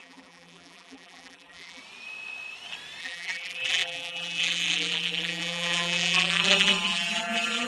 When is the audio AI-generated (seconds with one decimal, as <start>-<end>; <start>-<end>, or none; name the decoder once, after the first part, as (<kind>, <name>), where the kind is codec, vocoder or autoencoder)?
0.0-1.8 (vocoder, BigVGAN v2); 3.0-7.7